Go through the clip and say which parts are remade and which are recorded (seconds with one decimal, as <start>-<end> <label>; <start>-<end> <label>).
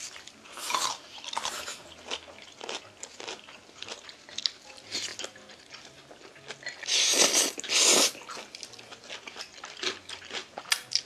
0.0-5.1 remade; 5.1-9.1 recorded; 9.1-11.1 remade